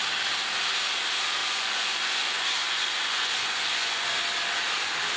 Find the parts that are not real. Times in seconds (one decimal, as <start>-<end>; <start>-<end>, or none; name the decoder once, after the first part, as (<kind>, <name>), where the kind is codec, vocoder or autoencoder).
1.4-4.2 (vocoder, Vocos)